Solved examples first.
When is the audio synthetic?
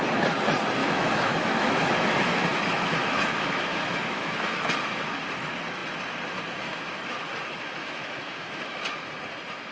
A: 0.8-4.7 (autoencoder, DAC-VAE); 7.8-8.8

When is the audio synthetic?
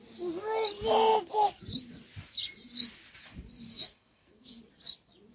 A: 3.7-4.6 (codec, SNAC)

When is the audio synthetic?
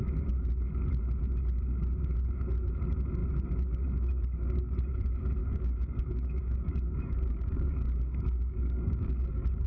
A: 5.4-9.7 (codec, DAC)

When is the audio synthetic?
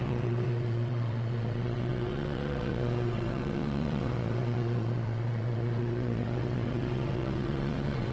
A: 0.0-8.1 (vocoder, WaveNeXt)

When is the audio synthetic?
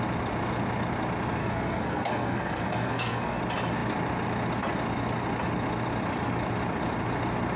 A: 1.4-3.4 (codec, SNAC)